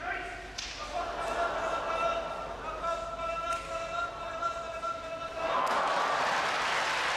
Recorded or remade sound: recorded